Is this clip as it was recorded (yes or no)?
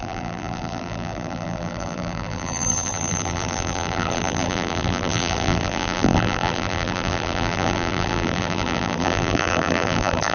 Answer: no